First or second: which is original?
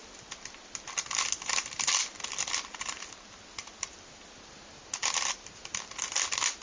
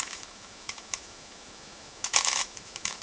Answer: first